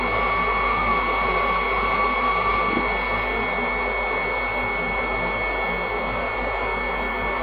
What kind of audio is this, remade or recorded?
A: recorded